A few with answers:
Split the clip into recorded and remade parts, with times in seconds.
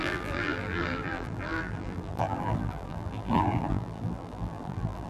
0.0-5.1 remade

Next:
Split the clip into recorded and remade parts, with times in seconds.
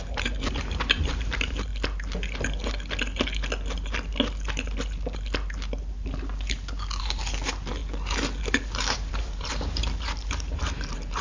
0.0-1.7 remade; 1.7-7.0 recorded; 7.0-7.8 remade; 7.8-8.4 recorded; 8.4-11.2 remade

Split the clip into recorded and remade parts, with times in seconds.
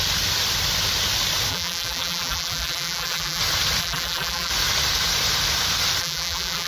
0.0-1.5 recorded; 1.5-3.4 remade; 3.4-3.8 recorded; 3.8-4.5 remade; 4.5-6.0 recorded; 6.0-6.7 remade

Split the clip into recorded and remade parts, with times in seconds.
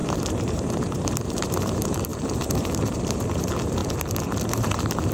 0.0-3.8 remade; 3.8-4.5 recorded; 4.5-5.1 remade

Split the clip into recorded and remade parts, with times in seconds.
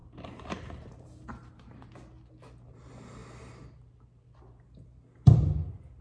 0.0-1.9 remade; 1.9-6.0 recorded